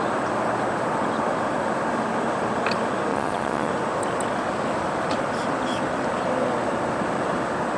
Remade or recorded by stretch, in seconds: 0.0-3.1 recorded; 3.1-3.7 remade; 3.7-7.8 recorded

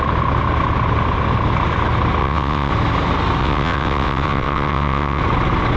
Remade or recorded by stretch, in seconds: 0.0-2.2 recorded; 2.2-2.7 remade; 2.7-3.4 recorded; 3.4-5.2 remade; 5.2-5.8 recorded

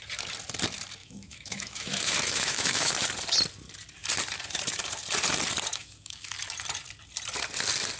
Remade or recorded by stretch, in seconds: 0.0-1.0 recorded; 1.0-2.9 remade; 2.9-5.7 recorded; 5.7-6.3 remade; 6.3-8.0 recorded

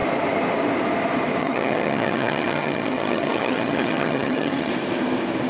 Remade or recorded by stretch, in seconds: 0.0-1.4 recorded; 1.4-4.7 remade; 4.7-5.5 recorded

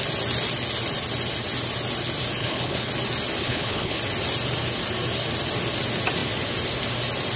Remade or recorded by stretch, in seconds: 0.0-2.4 recorded; 2.4-2.9 remade; 2.9-3.4 recorded; 3.4-4.0 remade; 4.0-7.4 recorded

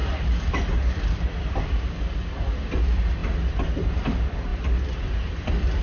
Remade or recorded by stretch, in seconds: 0.0-1.9 remade; 1.9-4.5 recorded; 4.5-5.8 remade